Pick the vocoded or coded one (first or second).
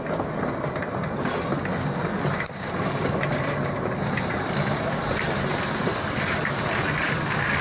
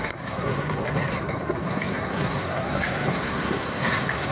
second